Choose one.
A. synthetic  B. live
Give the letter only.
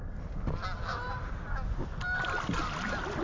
B